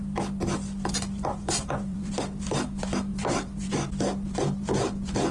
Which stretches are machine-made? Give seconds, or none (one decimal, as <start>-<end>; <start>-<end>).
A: 1.3-2.1; 3.1-3.7